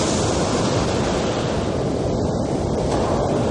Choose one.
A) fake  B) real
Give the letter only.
A